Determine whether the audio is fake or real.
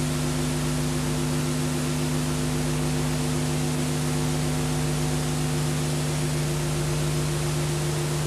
real